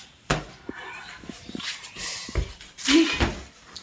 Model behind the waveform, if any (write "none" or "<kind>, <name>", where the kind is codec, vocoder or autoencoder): none